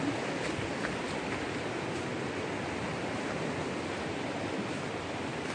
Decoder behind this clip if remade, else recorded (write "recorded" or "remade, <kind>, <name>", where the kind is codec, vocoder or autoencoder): recorded